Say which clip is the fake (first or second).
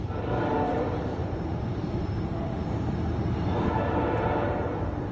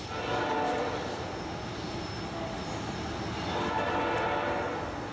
first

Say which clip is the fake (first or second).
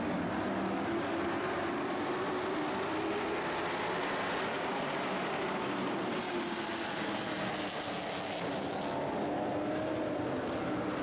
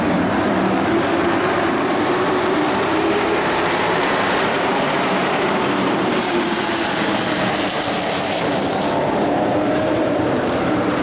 second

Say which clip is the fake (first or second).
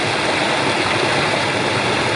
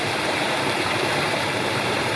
second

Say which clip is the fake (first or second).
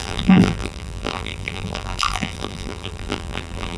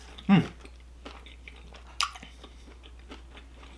first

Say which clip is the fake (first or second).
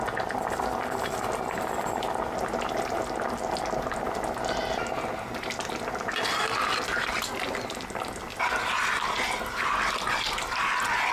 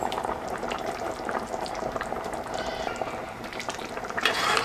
second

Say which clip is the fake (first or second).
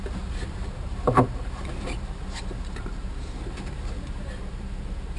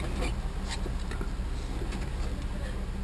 first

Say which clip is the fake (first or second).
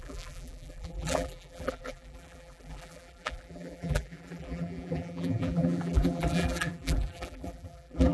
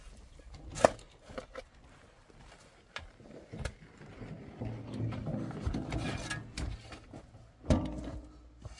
first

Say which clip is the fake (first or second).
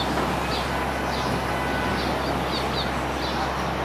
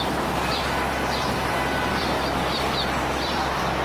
second